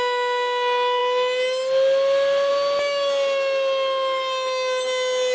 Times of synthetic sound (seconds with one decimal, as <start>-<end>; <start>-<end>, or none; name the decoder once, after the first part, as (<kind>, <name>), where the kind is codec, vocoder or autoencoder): none